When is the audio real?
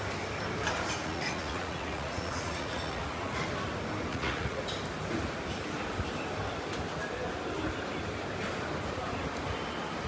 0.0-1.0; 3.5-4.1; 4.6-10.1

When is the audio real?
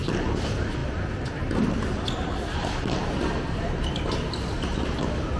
0.0-5.4